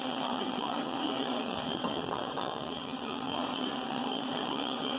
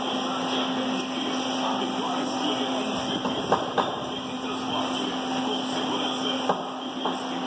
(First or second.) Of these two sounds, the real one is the second